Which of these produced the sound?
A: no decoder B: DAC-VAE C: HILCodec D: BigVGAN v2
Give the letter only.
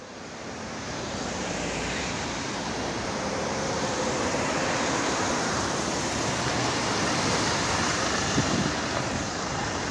D